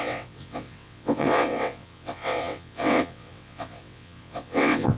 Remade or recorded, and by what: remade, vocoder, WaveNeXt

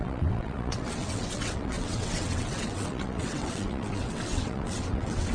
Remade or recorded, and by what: remade, vocoder, WaveNeXt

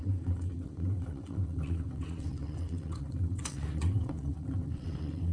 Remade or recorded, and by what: remade, vocoder, WaveNeXt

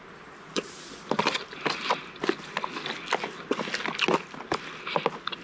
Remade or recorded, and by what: recorded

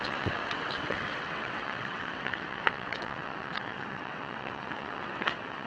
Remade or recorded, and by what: remade, vocoder, WaveNeXt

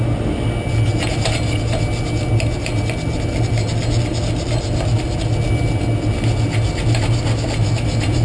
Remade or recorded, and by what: recorded